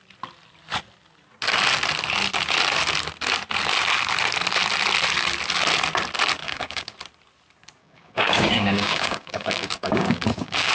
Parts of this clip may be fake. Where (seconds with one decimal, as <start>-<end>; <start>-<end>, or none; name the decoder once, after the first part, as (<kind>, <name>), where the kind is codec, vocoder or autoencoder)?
6.4-6.9 (codec, DAC); 7.8-10.7